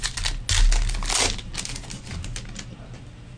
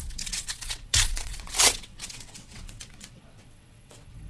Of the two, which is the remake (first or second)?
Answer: second